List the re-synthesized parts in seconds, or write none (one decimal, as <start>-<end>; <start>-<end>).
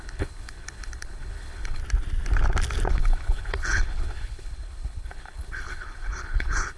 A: 0.0-1.8; 2.9-6.8